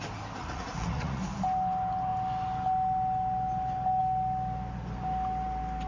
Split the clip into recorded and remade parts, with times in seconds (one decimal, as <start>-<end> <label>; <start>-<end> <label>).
0.0-0.4 recorded; 0.4-1.2 remade; 1.2-5.9 recorded

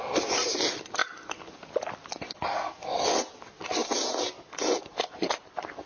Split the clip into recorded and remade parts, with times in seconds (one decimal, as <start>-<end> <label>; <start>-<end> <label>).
0.0-5.9 recorded